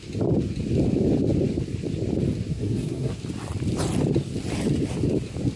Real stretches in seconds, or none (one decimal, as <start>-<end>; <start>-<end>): 0.0-2.5; 3.2-5.6